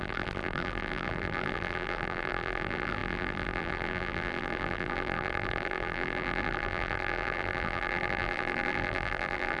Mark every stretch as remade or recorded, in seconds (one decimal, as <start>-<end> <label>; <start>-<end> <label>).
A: 0.0-9.6 remade